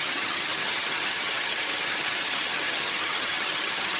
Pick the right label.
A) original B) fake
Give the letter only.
B